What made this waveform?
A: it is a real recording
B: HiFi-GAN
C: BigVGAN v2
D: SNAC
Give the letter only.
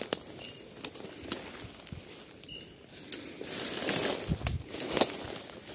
A